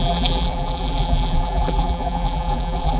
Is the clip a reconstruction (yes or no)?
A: yes